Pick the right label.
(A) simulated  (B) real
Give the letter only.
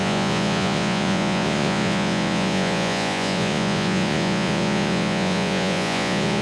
A